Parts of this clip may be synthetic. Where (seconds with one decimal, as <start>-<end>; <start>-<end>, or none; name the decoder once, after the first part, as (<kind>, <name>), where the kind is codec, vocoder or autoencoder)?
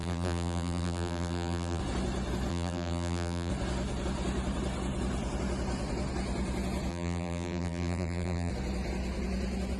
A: 0.0-1.8 (vocoder, BigVGAN v2); 2.5-3.5; 6.9-8.5